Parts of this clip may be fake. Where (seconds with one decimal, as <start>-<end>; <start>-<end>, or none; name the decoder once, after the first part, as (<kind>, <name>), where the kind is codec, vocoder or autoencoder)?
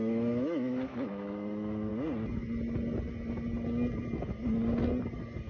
0.0-1.9 (autoencoder, DAC-VAE)